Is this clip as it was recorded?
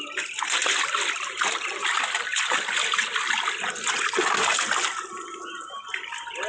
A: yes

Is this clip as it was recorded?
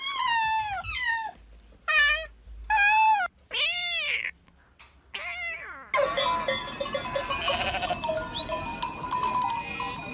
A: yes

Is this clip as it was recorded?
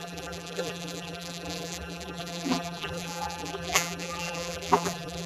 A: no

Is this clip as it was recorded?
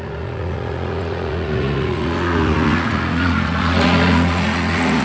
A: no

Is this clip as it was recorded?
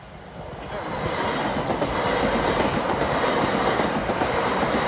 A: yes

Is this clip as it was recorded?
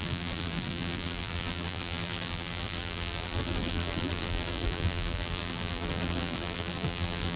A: no